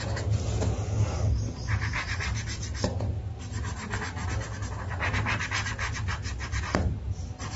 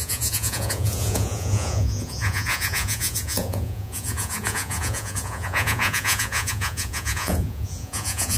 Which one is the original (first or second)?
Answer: first